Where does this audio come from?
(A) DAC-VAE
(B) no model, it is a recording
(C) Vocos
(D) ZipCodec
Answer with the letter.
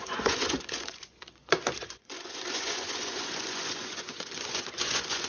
C